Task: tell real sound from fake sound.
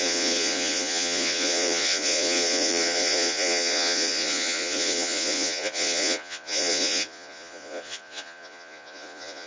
fake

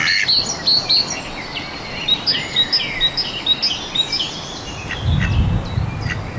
real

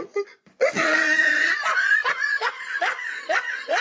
fake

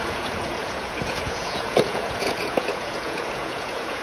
fake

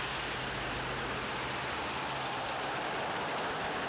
real